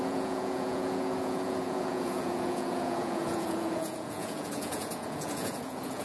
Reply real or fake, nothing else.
fake